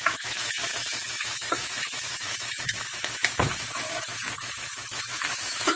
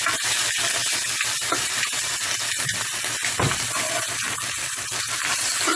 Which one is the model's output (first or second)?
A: first